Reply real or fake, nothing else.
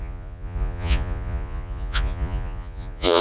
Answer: fake